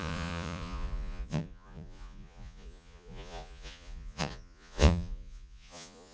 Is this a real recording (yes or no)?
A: no